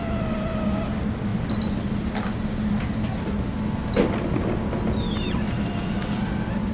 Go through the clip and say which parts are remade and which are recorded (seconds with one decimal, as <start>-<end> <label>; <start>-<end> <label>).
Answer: 0.0-6.7 recorded